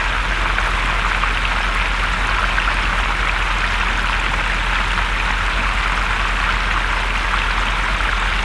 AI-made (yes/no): no